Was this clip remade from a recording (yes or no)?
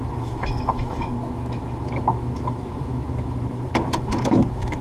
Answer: yes